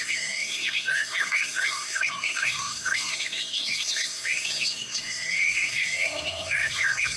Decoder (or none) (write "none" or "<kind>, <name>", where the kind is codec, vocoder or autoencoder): codec, SNAC